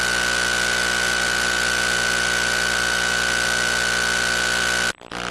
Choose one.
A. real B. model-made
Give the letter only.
A